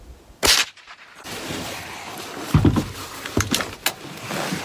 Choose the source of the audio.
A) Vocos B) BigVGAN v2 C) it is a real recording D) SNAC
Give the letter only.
C